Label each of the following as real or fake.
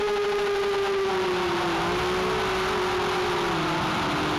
real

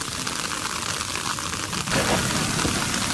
real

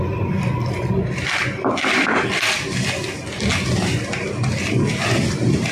real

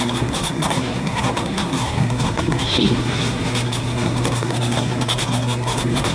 fake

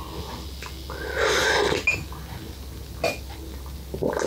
real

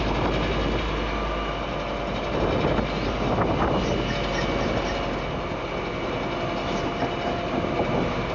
real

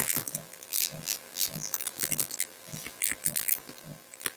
fake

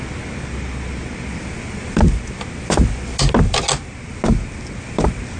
real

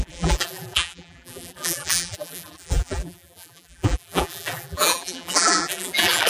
fake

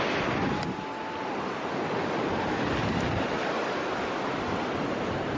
real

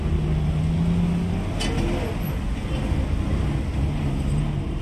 real